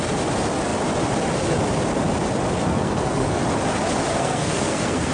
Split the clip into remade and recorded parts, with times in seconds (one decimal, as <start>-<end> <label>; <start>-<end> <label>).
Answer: 0.0-2.7 recorded; 2.7-3.4 remade; 3.4-4.1 recorded; 4.1-5.1 remade